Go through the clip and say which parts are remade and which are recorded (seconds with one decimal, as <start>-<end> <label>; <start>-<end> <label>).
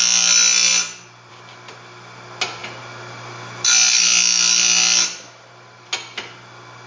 0.0-6.9 recorded